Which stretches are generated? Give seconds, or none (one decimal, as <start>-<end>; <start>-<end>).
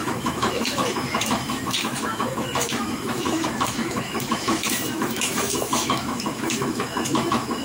0.0-7.6